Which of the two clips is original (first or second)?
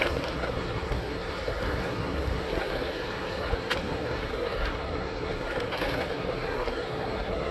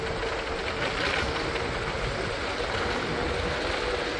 second